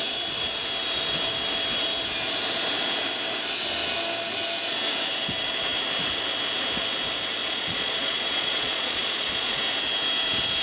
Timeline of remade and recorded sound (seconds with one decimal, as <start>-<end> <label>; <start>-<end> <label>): 0.0-7.4 recorded; 7.4-9.6 remade; 9.6-10.6 recorded